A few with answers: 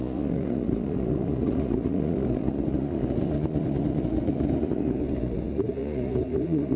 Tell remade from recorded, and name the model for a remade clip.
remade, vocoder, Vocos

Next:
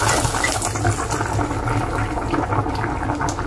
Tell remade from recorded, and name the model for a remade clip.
recorded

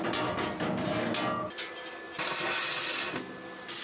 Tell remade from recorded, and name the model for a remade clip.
recorded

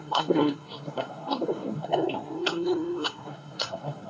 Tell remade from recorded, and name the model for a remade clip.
remade, codec, SNAC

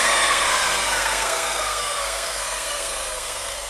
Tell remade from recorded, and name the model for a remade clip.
remade, codec, SNAC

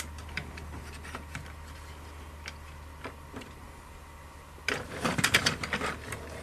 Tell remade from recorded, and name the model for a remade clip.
recorded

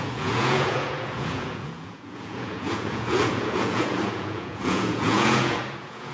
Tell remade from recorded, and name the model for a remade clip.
remade, vocoder, Vocos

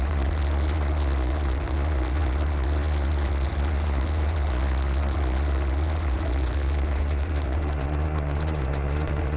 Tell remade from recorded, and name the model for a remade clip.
remade, vocoder, Vocos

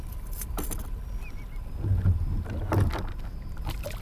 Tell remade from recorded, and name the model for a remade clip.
recorded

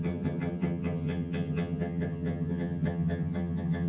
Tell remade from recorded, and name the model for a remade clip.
remade, vocoder, HiFi-GAN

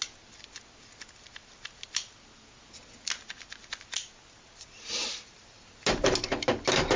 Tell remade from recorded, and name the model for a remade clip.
recorded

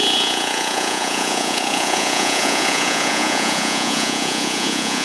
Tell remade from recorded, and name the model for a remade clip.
remade, vocoder, Vocos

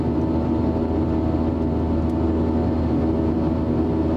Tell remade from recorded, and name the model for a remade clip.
recorded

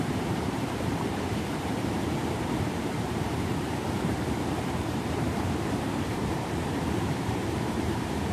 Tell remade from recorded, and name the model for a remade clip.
remade, vocoder, BigVGAN v2